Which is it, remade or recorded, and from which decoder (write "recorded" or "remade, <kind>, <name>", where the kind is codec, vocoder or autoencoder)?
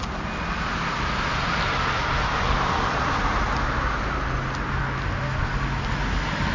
recorded